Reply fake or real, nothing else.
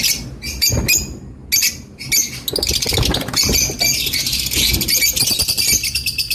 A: real